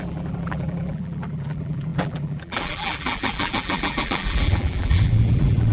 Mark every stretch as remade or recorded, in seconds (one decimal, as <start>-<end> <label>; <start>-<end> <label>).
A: 0.0-5.7 remade